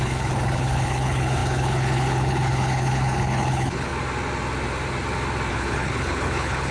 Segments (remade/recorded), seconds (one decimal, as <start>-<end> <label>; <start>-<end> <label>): 0.0-3.9 remade; 3.9-5.5 recorded; 5.5-6.7 remade